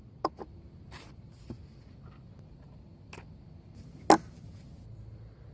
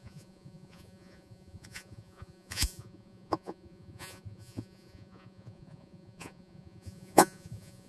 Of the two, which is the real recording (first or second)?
first